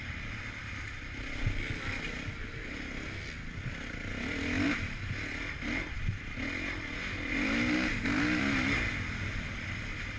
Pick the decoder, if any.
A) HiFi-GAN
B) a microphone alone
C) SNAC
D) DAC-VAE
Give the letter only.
B